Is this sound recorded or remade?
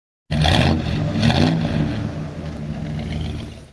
recorded